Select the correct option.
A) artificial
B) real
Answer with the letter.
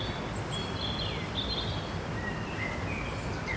B